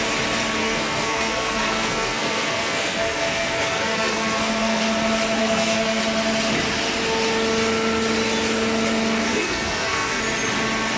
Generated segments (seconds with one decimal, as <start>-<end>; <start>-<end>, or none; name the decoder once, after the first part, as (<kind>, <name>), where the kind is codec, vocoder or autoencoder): 0.6-4.8 (codec, SNAC); 5.4-6.0; 9.3-10.2

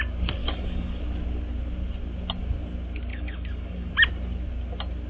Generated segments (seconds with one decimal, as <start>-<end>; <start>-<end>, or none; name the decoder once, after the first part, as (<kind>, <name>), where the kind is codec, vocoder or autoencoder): 0.4-1.0 (codec, DAC); 3.1-3.9

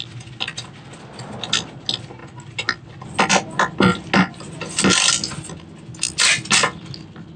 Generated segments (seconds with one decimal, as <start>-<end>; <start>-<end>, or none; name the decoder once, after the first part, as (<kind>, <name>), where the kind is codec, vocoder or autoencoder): none

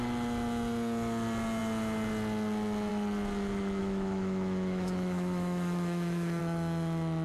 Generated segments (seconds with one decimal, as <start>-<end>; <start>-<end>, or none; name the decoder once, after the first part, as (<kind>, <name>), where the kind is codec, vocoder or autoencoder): 3.8-6.4 (autoencoder, DAC-VAE)

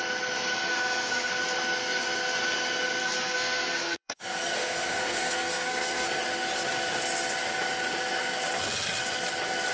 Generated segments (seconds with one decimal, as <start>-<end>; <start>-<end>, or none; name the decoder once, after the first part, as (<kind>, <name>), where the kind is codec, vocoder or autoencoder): 0.5-1.3 (codec, SNAC); 3.0-6.2

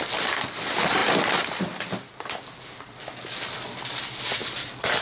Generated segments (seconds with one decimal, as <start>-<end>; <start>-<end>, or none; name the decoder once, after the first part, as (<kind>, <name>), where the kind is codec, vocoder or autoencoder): 1.0-2.1 (vocoder, BigVGAN v2); 4.4-5.0

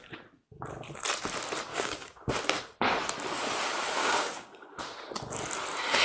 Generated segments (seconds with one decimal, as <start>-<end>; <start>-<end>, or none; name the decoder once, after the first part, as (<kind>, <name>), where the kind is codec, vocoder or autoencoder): 1.7-2.3 (codec, DAC); 4.0-4.8

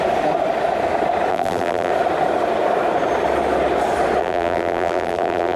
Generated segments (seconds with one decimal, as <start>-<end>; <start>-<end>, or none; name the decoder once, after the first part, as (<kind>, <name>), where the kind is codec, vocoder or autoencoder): 1.3-1.9 (vocoder, BigVGAN v2); 4.2-5.6